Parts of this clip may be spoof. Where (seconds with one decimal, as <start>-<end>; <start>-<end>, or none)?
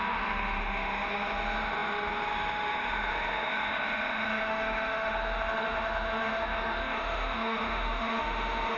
0.0-8.8